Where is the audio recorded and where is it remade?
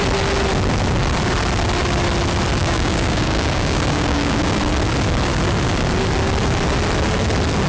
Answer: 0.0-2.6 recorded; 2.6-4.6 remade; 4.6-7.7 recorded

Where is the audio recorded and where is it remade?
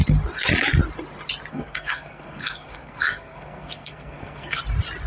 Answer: 0.0-1.5 recorded; 1.5-4.6 remade; 4.6-5.1 recorded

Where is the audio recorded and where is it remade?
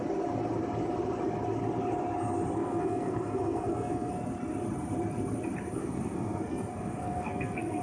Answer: 0.0-2.6 recorded; 2.6-4.1 remade; 4.1-5.8 recorded; 5.8-7.8 remade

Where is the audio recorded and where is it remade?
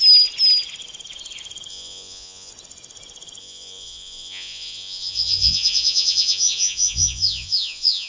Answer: 0.0-1.7 recorded; 1.7-2.5 remade; 2.5-3.4 recorded; 3.4-8.1 remade